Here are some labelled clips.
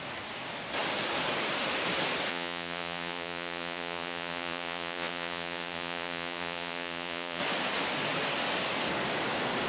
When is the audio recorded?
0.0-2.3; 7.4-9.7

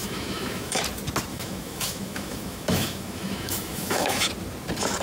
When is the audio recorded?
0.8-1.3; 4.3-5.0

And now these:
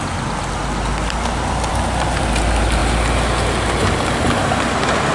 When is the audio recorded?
0.0-5.1

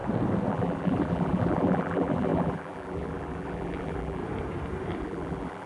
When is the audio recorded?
0.0-0.5; 4.2-5.0

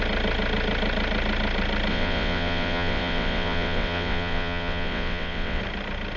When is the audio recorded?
0.0-1.9; 5.6-6.2

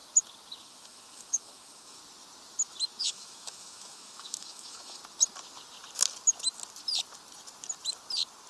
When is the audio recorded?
0.0-0.6; 2.0-3.0; 5.0-8.5